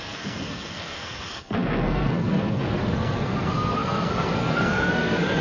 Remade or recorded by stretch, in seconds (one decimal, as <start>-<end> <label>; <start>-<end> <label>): 0.0-5.4 remade